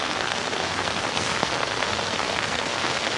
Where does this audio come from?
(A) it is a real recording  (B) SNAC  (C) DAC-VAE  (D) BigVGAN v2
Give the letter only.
B